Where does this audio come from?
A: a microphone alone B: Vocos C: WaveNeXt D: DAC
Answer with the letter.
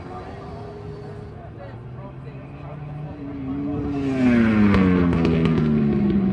A